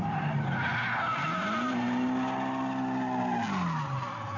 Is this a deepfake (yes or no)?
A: no